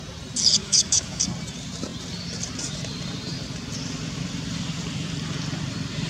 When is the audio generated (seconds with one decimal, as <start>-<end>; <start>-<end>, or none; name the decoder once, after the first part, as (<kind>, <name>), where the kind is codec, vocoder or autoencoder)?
0.6-1.2 (autoencoder, DAC-VAE)